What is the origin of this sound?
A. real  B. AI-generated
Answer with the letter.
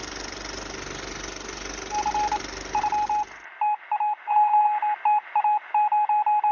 A